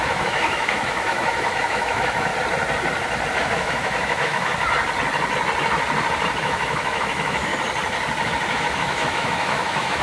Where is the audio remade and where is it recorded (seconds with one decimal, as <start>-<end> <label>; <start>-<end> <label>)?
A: 0.0-2.3 remade; 2.3-3.3 recorded; 3.3-4.5 remade; 4.5-6.4 recorded; 6.4-7.5 remade; 7.5-8.5 recorded; 8.5-10.0 remade